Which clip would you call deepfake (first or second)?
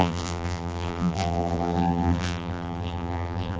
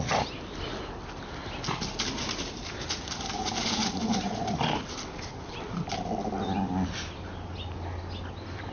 first